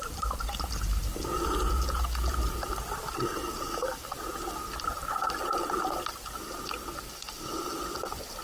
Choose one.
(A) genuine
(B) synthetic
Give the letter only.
A